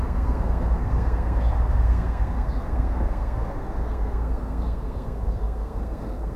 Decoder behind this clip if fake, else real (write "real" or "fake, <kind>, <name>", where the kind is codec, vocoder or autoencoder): fake, codec, SNAC